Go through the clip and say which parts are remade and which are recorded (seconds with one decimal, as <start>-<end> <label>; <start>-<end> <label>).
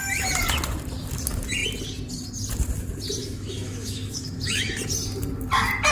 0.0-3.2 recorded; 3.2-4.8 remade; 4.8-5.9 recorded